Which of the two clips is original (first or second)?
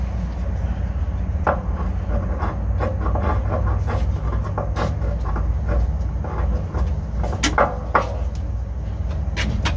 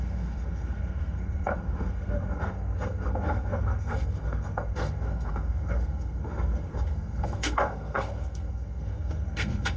first